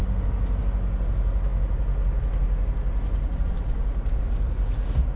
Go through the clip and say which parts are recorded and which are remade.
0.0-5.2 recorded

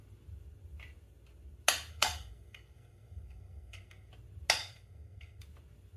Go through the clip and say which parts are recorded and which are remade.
0.0-1.9 recorded; 1.9-4.1 remade; 4.1-4.6 recorded; 4.6-5.4 remade; 5.4-6.0 recorded

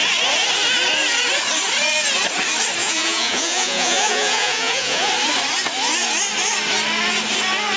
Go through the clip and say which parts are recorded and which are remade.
0.0-2.8 recorded; 2.8-5.1 remade; 5.1-7.8 recorded